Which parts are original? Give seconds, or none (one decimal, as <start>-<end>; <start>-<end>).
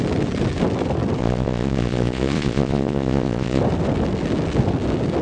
0.0-1.2; 3.6-5.2